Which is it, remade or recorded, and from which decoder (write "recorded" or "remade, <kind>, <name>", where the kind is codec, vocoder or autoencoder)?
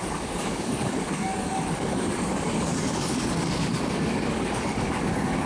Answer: remade, codec, DAC